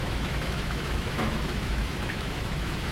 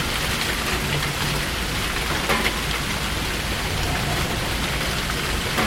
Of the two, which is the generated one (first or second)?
first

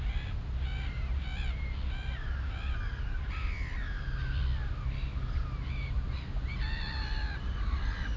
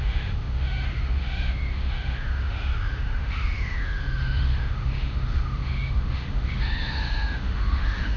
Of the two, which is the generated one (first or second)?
second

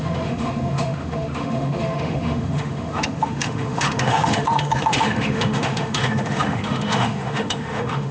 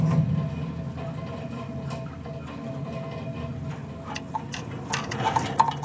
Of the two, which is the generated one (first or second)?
first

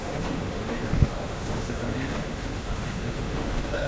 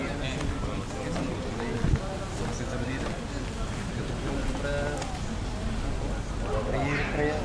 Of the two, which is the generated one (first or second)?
first